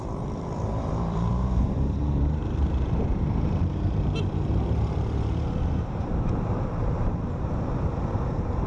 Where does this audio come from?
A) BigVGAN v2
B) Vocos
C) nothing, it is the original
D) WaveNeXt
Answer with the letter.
A